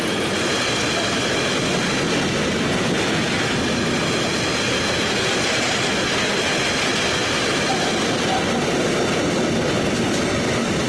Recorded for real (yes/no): yes